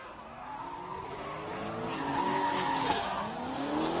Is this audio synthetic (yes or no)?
no